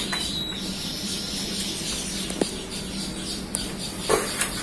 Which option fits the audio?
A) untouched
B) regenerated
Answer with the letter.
A